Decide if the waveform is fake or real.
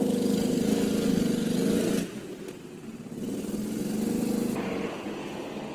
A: real